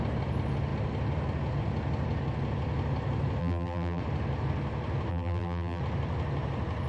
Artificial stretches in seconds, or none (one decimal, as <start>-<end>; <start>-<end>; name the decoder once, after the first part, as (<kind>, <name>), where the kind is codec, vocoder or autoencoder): 3.4-4.0 (vocoder, BigVGAN v2); 5.1-5.8